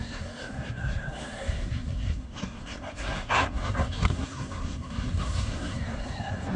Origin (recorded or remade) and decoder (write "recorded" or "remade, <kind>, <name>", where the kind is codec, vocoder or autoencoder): remade, codec, SNAC